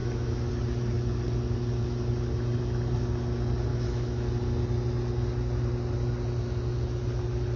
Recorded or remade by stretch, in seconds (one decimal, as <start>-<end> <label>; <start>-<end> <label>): 0.0-0.5 remade; 0.5-3.7 recorded; 3.7-4.3 remade; 4.3-7.6 recorded